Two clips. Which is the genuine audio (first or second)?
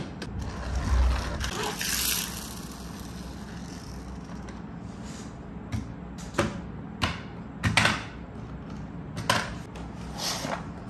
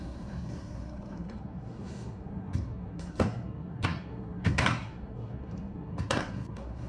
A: first